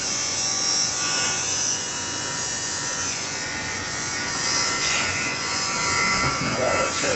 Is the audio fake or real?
fake